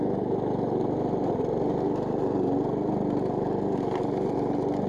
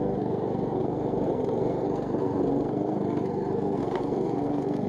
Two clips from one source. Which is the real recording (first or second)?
first